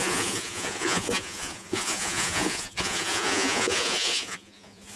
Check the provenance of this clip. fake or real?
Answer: fake